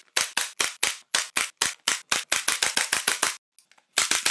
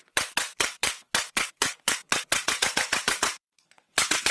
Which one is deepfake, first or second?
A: second